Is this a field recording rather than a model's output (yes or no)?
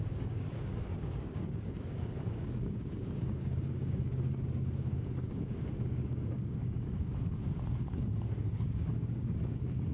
no